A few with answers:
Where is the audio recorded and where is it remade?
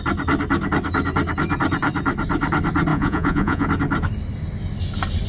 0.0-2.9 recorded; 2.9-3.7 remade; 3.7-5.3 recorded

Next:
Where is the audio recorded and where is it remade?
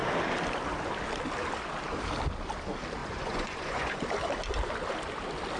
0.0-3.0 recorded; 3.0-4.0 remade; 4.0-5.6 recorded